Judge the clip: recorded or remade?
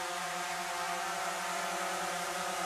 remade